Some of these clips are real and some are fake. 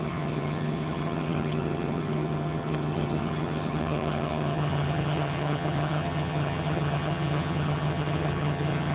fake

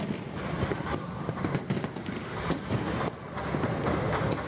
real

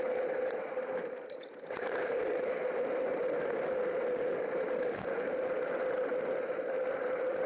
real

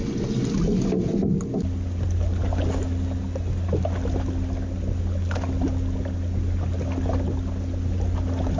real